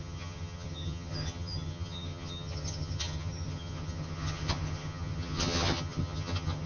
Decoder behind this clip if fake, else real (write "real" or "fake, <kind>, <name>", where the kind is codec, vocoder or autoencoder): fake, vocoder, HiFi-GAN